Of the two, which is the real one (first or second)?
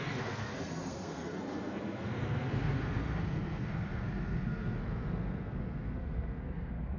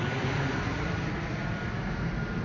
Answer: second